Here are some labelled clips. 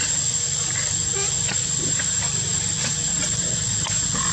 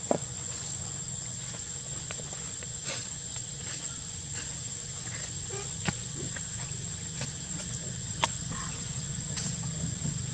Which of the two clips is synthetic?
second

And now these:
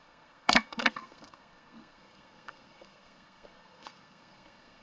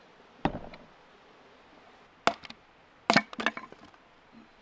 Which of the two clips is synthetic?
first